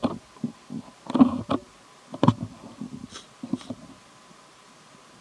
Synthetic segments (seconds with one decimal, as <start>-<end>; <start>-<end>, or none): 3.1-5.2